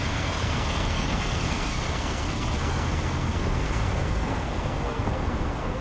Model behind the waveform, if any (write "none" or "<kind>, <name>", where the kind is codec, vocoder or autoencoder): codec, SNAC